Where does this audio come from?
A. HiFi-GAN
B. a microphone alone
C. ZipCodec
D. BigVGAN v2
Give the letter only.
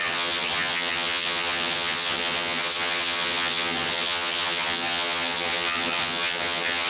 A